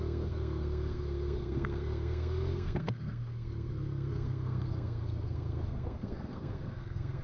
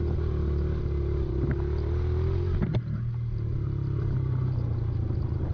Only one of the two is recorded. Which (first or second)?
second